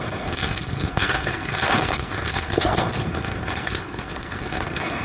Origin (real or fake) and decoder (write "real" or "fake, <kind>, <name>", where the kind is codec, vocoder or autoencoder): fake, codec, SNAC